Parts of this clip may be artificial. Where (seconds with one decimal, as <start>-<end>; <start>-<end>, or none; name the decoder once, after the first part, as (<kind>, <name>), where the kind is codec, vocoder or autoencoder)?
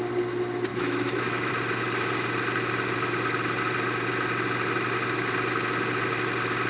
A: 0.7-1.5 (autoencoder, DAC-VAE)